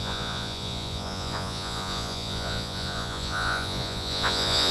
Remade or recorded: remade